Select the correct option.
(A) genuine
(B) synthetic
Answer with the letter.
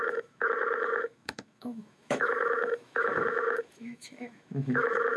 B